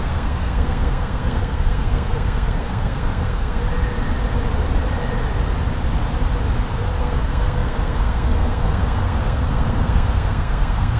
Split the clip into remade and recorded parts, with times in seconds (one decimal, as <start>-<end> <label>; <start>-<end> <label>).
0.0-3.6 remade; 3.6-7.0 recorded; 7.0-11.0 remade